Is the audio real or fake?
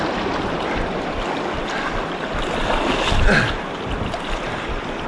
real